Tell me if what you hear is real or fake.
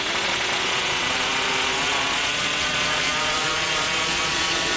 fake